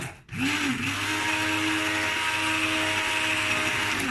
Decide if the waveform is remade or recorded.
recorded